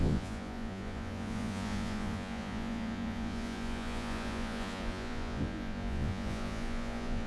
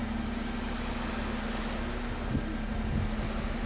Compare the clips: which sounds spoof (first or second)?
first